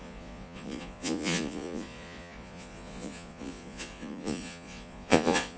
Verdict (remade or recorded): remade